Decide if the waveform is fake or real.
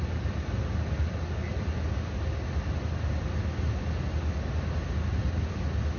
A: real